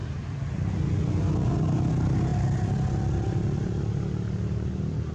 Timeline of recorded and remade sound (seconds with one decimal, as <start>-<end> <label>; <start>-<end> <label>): 0.0-5.1 recorded

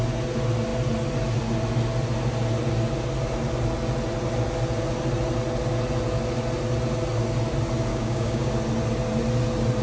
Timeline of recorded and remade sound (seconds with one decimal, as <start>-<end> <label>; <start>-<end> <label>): 0.0-7.9 recorded; 7.9-8.5 remade; 8.5-9.8 recorded

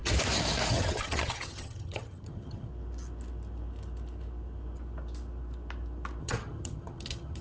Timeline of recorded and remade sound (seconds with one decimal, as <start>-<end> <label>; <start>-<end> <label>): 0.0-0.7 recorded; 0.7-2.7 remade; 2.7-6.2 recorded; 6.2-7.4 remade

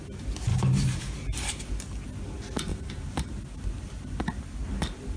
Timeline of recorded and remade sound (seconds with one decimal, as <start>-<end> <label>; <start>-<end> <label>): 0.0-0.5 recorded; 0.5-1.6 remade; 1.6-2.7 recorded; 2.7-3.3 remade; 3.3-5.2 recorded

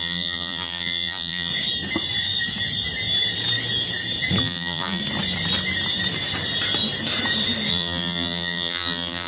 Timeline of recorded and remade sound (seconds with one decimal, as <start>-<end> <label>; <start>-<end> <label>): 0.0-1.5 remade; 1.5-4.4 recorded; 4.4-5.0 remade; 5.0-7.7 recorded; 7.7-9.3 remade

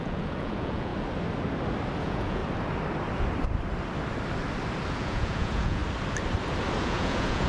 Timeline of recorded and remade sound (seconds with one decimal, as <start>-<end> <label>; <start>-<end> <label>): 0.0-0.9 remade; 0.9-2.0 recorded; 2.0-2.4 remade; 2.4-4.9 recorded; 4.9-5.8 remade; 5.8-6.8 recorded; 6.8-7.5 remade

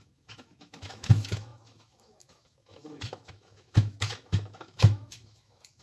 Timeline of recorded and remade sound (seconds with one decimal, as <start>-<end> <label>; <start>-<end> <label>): 0.0-5.8 remade